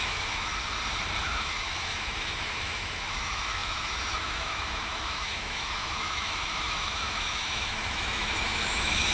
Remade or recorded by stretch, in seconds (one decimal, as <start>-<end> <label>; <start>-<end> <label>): 0.0-0.5 remade; 0.5-1.2 recorded; 1.2-9.1 remade